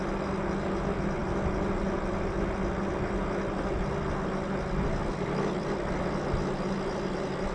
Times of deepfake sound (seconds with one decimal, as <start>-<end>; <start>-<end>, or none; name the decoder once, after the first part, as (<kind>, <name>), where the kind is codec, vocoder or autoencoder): none